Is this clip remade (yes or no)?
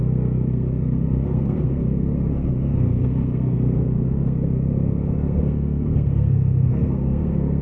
yes